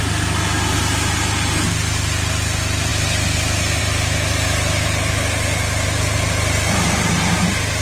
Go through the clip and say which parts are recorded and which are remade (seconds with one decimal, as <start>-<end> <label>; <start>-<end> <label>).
0.0-7.8 recorded